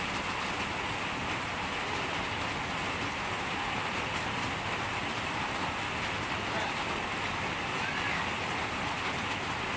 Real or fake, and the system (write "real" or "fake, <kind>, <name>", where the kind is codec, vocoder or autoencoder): real